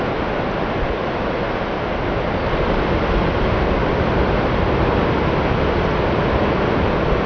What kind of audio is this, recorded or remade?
recorded